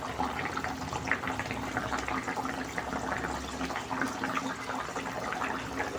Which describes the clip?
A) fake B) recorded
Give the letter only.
A